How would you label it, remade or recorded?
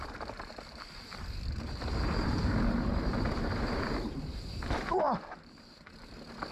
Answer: remade